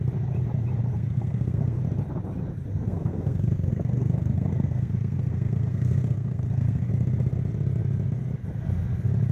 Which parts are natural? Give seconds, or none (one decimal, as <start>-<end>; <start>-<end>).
0.0-0.9; 1.8-2.7; 6.9-9.3